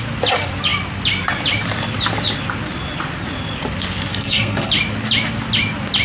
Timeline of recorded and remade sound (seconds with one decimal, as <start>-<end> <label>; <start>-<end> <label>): 0.0-4.1 recorded; 4.1-4.7 remade; 4.7-6.0 recorded